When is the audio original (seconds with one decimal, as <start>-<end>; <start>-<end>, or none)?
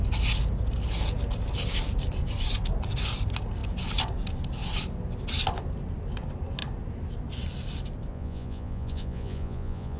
0.0-8.1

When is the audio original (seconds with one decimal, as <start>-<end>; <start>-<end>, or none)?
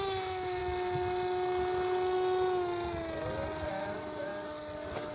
0.6-3.7; 4.3-5.1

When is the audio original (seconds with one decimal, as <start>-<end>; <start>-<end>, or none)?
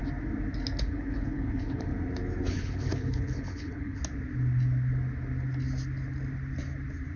0.0-0.8; 1.9-2.5; 4.0-7.2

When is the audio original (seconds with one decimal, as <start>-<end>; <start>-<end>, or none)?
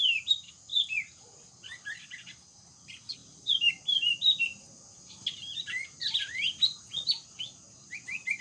0.0-8.4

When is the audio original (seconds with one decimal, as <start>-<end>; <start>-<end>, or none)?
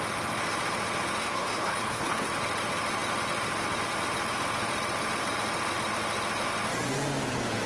0.0-1.2; 2.3-7.7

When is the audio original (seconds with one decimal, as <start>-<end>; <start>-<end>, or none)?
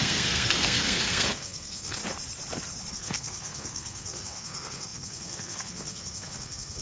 2.0-2.9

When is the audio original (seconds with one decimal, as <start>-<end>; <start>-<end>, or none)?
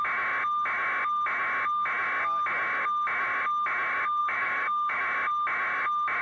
0.0-4.2; 5.0-6.2